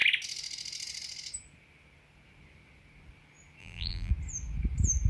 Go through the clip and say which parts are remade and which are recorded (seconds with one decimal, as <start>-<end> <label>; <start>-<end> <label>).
0.0-3.6 recorded; 3.6-4.1 remade; 4.1-5.1 recorded